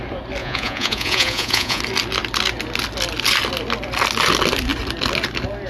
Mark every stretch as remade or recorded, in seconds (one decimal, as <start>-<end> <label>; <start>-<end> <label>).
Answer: 0.0-0.4 recorded; 0.4-1.8 remade; 1.8-5.7 recorded